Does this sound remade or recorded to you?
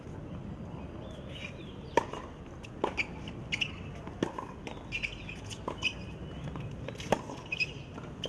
recorded